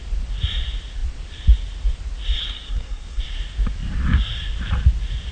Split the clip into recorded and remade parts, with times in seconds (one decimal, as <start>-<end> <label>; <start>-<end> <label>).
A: 0.0-2.4 recorded; 2.4-3.2 remade; 3.2-5.3 recorded